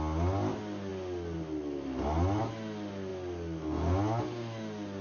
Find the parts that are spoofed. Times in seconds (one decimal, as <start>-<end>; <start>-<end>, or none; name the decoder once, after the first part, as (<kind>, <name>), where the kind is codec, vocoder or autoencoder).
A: none